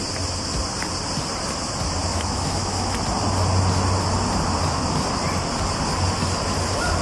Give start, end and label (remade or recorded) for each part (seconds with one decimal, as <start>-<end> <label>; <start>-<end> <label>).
0.0-2.1 recorded; 2.1-3.0 remade; 3.0-7.0 recorded